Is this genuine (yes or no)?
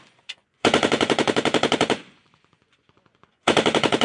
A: no